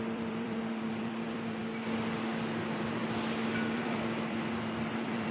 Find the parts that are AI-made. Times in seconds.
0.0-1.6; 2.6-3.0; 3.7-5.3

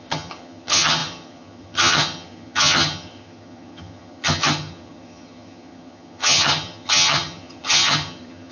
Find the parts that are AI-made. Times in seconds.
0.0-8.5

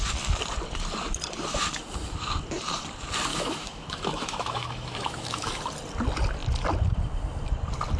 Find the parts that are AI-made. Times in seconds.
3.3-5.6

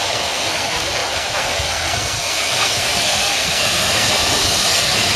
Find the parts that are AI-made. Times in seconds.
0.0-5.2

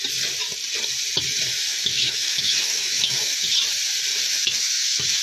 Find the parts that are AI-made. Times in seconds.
1.7-3.5; 4.1-5.2

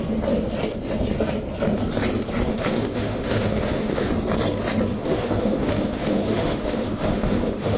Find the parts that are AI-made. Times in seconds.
2.5-4.1; 4.9-7.8

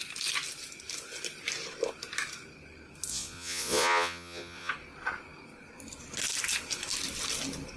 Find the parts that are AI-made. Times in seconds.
3.1-4.7